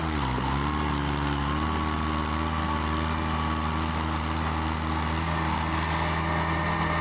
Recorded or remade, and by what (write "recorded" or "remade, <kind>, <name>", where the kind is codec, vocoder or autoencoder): recorded